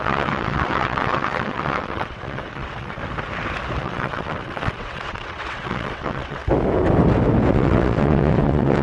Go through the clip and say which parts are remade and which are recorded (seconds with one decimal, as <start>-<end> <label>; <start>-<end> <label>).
0.0-3.0 remade; 3.0-3.8 recorded; 3.8-6.4 remade; 6.4-7.5 recorded; 7.5-8.8 remade

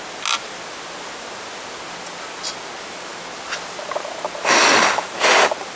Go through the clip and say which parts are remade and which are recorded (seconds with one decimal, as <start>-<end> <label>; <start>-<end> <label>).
0.0-5.8 recorded

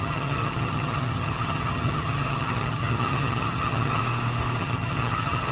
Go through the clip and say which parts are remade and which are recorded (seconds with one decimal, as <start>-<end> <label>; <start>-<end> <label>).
0.0-4.0 remade; 4.0-4.6 recorded; 4.6-5.5 remade

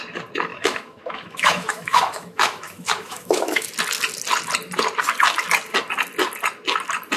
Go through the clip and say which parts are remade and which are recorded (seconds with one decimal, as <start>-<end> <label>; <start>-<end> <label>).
0.0-0.5 recorded; 0.5-3.7 remade; 3.7-7.2 recorded

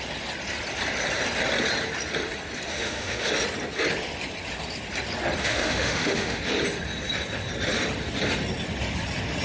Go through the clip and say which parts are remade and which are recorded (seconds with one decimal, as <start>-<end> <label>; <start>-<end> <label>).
0.0-2.7 recorded; 2.7-3.3 remade; 3.3-5.4 recorded; 5.4-6.4 remade; 6.4-9.4 recorded

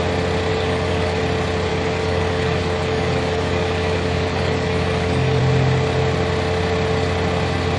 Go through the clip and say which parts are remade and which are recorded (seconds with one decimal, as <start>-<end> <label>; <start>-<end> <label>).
0.0-0.5 recorded; 0.5-1.2 remade; 1.2-1.7 recorded; 1.7-5.4 remade; 5.4-7.8 recorded

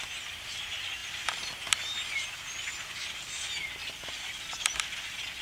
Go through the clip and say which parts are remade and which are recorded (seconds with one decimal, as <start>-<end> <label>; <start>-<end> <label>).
0.0-1.0 recorded; 1.0-2.1 remade; 2.1-3.8 recorded; 3.8-5.4 remade

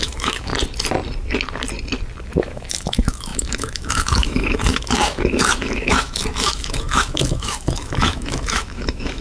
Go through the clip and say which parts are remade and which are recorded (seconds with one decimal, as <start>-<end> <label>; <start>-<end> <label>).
0.0-0.5 remade; 0.5-2.4 recorded; 2.4-9.2 remade